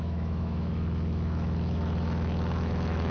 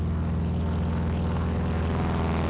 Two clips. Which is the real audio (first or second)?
second